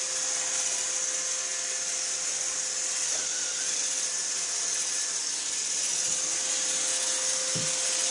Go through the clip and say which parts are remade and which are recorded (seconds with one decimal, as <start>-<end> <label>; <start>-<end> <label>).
0.0-8.1 recorded